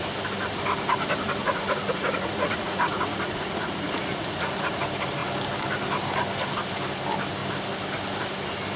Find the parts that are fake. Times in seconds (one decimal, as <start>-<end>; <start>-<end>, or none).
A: 1.4-4.8